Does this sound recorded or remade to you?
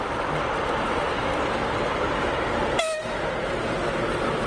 recorded